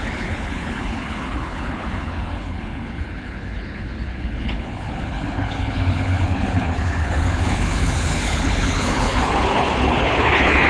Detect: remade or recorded remade